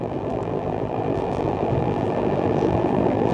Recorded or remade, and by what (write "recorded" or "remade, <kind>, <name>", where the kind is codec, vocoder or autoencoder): remade, vocoder, BigVGAN v2